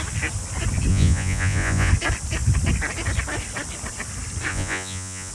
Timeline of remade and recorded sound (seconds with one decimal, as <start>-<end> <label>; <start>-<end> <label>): 0.0-0.9 recorded; 0.9-1.9 remade; 1.9-4.5 recorded; 4.5-5.3 remade